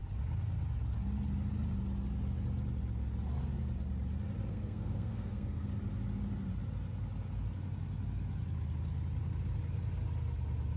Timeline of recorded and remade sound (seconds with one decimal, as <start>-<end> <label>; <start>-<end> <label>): 0.0-4.5 recorded; 4.5-5.7 remade; 5.7-10.8 recorded